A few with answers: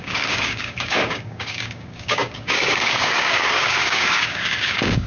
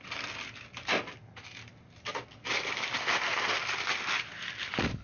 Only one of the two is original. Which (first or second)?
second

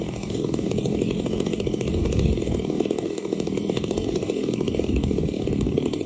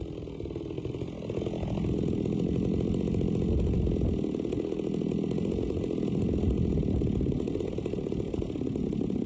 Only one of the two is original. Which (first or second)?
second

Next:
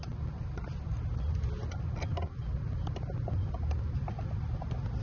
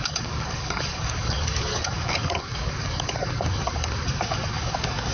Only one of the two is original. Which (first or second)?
first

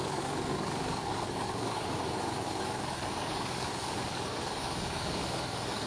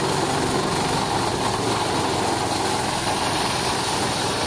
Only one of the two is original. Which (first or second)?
second